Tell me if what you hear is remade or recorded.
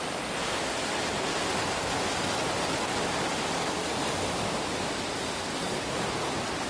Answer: recorded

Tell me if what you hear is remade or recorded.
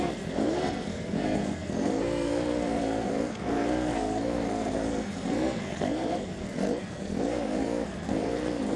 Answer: remade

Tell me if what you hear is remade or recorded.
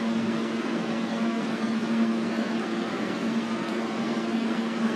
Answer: remade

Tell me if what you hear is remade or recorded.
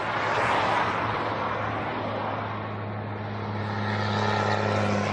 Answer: recorded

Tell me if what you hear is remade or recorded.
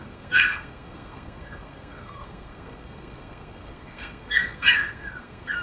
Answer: remade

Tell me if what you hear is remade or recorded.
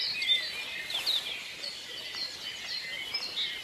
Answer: recorded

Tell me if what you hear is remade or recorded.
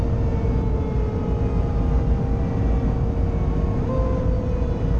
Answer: recorded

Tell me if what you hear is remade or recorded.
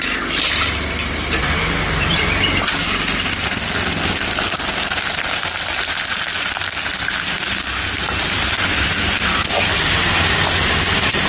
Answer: recorded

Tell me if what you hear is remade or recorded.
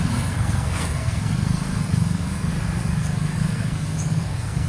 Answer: remade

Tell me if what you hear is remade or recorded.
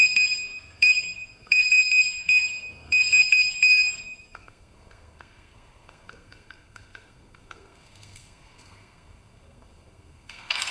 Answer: remade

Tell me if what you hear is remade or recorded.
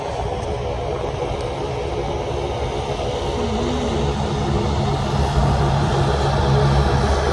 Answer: recorded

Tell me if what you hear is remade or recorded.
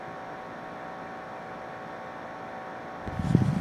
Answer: recorded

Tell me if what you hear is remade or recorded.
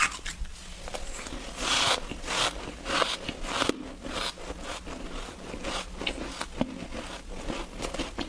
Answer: recorded